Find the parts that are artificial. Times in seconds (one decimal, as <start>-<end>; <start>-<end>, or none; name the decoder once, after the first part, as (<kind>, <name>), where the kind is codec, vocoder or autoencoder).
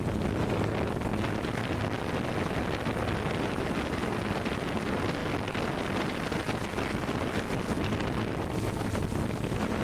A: none